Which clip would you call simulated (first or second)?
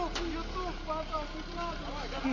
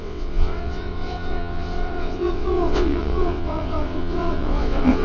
second